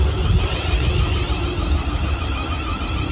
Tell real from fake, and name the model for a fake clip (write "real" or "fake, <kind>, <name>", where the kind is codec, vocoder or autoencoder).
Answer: real